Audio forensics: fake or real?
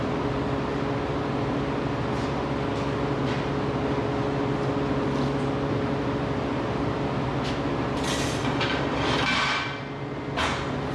real